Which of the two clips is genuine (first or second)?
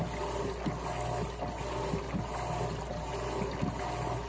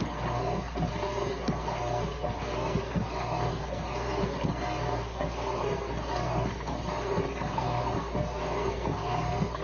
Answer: first